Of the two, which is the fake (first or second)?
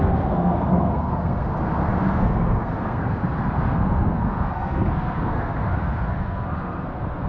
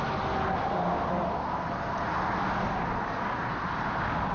first